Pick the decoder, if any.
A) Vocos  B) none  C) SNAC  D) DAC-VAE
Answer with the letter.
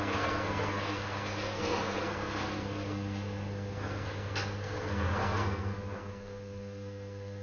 C